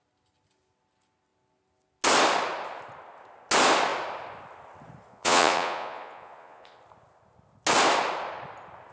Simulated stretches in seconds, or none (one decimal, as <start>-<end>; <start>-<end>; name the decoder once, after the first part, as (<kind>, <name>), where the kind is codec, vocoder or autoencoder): 5.1-6.8 (vocoder, Vocos)